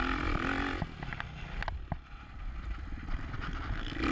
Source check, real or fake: real